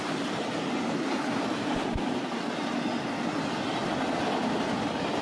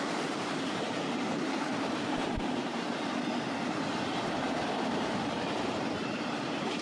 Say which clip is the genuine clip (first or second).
first